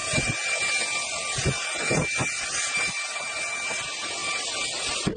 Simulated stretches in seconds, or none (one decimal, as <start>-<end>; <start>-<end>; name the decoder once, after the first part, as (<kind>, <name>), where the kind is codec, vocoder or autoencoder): none